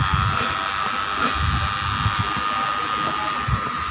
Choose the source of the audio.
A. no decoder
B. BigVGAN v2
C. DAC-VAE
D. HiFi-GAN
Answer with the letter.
A